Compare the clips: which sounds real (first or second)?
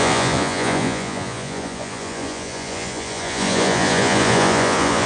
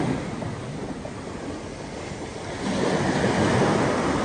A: second